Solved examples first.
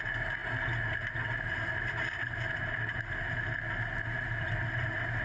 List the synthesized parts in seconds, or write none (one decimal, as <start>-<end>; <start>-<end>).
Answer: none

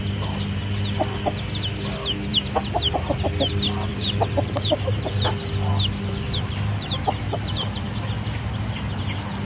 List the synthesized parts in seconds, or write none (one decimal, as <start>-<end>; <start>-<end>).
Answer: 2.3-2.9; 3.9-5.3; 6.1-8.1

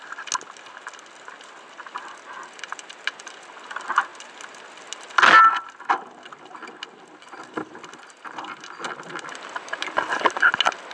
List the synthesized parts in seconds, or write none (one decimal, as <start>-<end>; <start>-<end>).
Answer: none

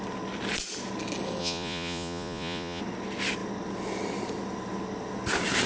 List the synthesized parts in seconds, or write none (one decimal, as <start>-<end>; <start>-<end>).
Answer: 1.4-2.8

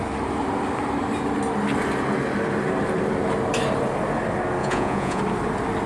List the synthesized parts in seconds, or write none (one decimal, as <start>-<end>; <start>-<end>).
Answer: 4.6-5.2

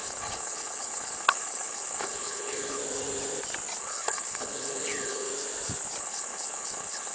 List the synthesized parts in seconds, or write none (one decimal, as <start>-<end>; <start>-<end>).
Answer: 0.0-2.8; 3.8-5.3; 6.0-7.1

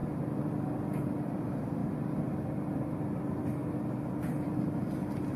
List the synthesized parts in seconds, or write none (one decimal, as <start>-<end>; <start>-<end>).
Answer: 1.1-1.8; 3.2-3.6; 4.3-5.4